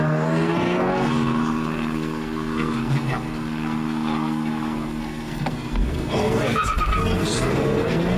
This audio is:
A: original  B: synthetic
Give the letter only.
B